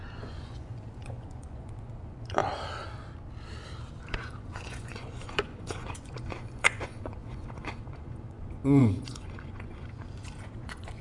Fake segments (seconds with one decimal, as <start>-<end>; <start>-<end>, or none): 0.0-2.4; 4.1-11.0